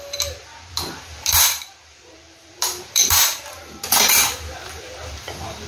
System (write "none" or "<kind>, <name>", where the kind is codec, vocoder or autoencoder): vocoder, BigVGAN v2